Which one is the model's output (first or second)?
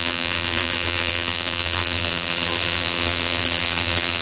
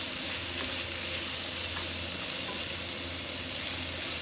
first